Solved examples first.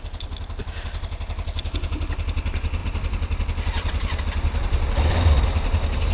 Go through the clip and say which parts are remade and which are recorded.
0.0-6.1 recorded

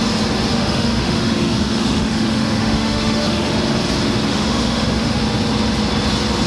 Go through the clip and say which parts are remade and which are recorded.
0.0-0.5 recorded; 0.5-3.5 remade; 3.5-4.3 recorded; 4.3-5.2 remade; 5.2-6.5 recorded

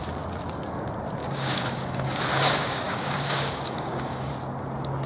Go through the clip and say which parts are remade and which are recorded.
0.0-1.2 recorded; 1.2-4.3 remade; 4.3-5.1 recorded

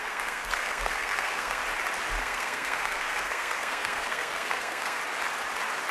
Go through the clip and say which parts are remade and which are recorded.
0.0-1.6 remade; 1.6-2.2 recorded; 2.2-5.0 remade; 5.0-5.9 recorded

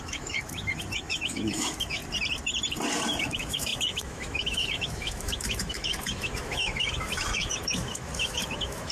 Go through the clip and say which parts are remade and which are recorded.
0.0-2.0 remade; 2.0-3.2 recorded; 3.2-8.9 remade